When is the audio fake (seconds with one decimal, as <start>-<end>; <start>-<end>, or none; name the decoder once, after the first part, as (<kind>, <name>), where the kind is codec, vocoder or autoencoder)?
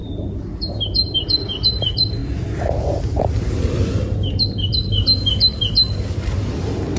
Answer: none